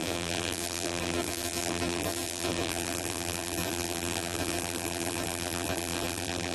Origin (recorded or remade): remade